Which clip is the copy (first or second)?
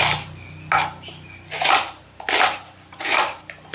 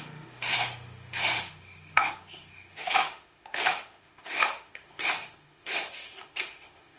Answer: second